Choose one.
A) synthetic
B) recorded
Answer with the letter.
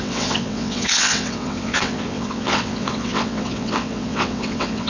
A